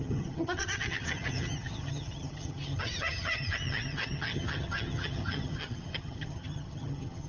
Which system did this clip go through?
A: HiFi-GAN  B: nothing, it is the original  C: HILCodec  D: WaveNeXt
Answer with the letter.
A